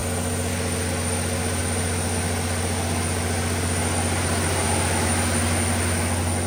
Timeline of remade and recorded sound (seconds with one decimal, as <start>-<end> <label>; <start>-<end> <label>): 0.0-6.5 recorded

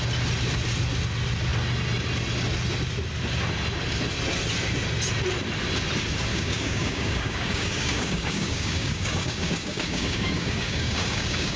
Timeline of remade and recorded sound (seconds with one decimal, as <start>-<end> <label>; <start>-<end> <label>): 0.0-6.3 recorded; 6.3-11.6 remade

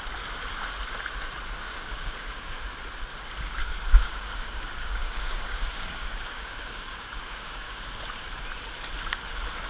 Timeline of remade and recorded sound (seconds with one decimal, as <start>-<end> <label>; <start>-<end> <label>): 0.0-1.7 recorded; 1.7-2.5 remade; 2.5-3.6 recorded; 3.6-7.9 remade; 7.9-9.7 recorded